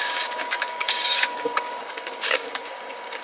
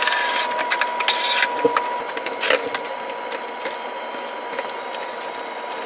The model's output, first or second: first